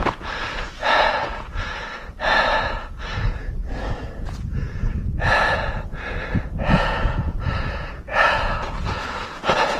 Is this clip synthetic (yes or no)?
yes